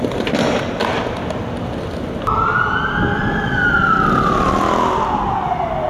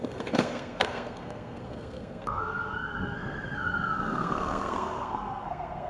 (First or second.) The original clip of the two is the first